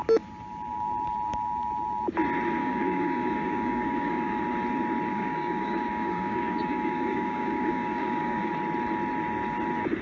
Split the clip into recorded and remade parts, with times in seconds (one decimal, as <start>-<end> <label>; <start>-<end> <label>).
0.0-2.6 recorded; 2.6-4.4 remade; 4.4-5.1 recorded; 5.1-8.5 remade; 8.5-10.0 recorded